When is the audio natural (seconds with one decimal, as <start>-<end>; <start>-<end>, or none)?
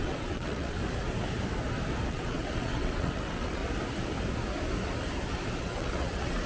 0.8-2.1; 3.6-5.6